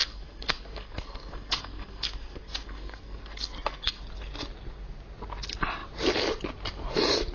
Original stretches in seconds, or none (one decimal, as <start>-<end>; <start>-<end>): 4.0-7.3